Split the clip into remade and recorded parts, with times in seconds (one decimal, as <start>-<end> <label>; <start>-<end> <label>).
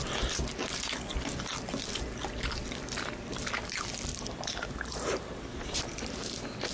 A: 0.0-4.1 recorded; 4.1-6.7 remade